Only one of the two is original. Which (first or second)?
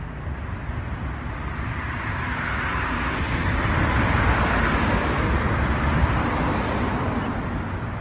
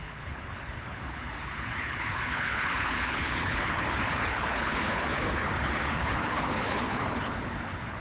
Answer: first